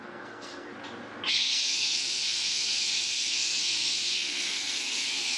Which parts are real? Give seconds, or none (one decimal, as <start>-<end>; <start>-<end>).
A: 0.7-1.3